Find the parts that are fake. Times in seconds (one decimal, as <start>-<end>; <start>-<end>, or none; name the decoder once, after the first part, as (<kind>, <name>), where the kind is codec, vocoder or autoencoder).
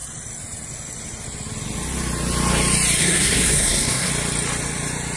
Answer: 3.0-4.1 (codec, SNAC)